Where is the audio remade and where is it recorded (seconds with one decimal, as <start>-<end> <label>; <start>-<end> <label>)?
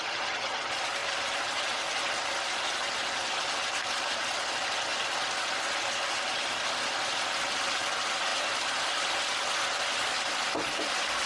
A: 0.0-11.3 recorded